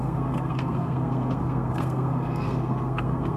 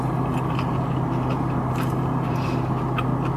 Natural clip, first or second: second